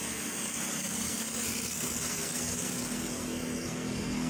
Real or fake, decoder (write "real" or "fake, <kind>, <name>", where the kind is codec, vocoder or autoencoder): fake, codec, SNAC